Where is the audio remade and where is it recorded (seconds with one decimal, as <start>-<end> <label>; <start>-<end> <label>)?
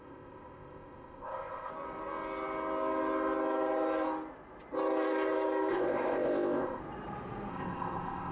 0.0-1.7 remade; 1.7-5.7 recorded; 5.7-6.8 remade; 6.8-7.5 recorded; 7.5-8.3 remade